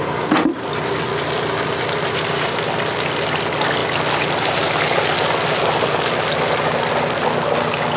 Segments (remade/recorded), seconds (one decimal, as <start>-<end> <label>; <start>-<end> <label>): 0.0-8.0 recorded